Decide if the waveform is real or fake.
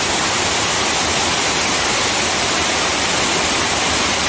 real